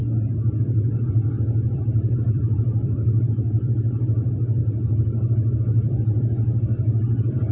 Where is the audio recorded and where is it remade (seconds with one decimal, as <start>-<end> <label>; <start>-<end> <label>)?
0.0-0.6 recorded; 0.6-4.6 remade; 4.6-5.6 recorded; 5.6-7.5 remade